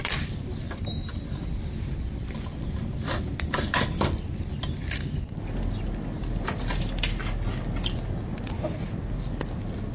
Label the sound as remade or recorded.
recorded